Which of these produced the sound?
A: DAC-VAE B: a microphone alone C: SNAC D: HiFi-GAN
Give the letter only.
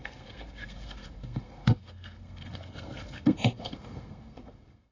C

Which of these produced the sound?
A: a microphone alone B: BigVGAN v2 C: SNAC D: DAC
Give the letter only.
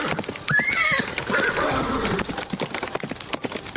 A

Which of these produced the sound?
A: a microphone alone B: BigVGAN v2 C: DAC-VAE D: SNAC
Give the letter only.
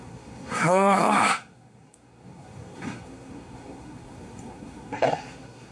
D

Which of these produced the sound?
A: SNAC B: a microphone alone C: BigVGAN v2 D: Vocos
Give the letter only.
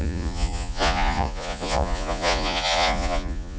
D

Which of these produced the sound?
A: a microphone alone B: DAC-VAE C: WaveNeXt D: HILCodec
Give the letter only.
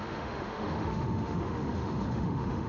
B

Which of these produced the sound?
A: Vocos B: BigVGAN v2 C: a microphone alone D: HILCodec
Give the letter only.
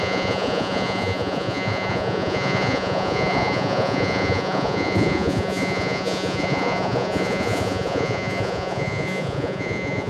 A